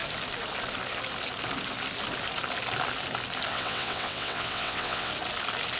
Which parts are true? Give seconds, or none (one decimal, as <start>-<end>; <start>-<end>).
0.0-3.5; 5.1-5.8